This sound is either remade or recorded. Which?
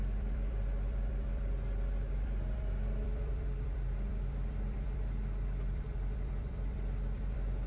remade